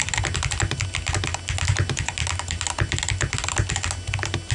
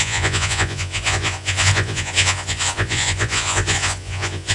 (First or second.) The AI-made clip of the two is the second